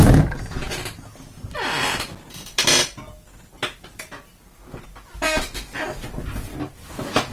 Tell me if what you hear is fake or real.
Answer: real